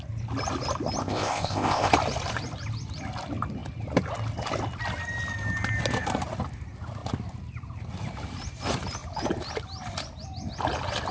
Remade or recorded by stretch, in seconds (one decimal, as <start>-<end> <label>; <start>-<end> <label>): 0.0-1.0 recorded; 1.0-1.9 remade; 1.9-11.1 recorded